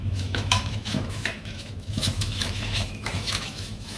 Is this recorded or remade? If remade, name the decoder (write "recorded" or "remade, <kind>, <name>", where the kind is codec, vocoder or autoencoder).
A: remade, autoencoder, DAC-VAE